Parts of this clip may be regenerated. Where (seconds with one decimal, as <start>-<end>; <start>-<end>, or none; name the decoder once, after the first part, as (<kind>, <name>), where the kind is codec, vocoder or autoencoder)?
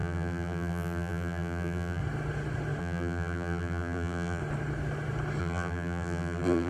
0.0-2.0 (vocoder, BigVGAN v2); 2.8-4.4; 5.4-6.7